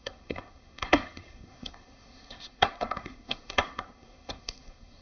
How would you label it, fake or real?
fake